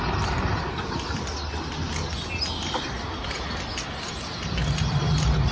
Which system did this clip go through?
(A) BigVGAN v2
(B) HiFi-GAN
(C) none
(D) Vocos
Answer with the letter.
C